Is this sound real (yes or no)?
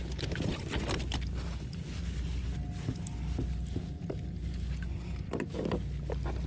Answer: yes